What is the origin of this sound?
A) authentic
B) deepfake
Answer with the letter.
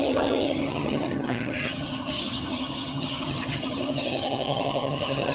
B